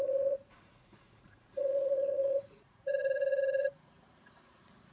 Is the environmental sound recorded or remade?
remade